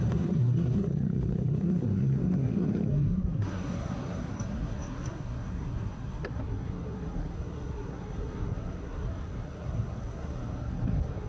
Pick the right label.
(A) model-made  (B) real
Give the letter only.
A